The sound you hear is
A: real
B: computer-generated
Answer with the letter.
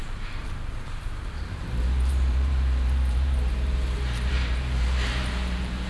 B